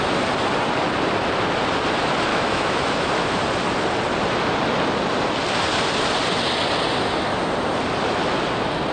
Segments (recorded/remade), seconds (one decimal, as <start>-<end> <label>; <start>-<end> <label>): 0.0-2.3 recorded; 2.3-3.1 remade; 3.1-8.9 recorded